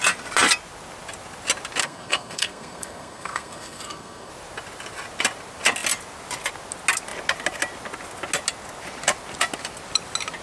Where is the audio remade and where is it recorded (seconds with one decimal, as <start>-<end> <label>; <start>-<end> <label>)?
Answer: 0.0-1.8 recorded; 1.8-4.3 remade; 4.3-10.4 recorded